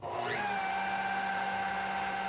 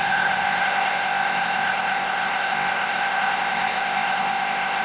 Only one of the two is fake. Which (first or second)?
second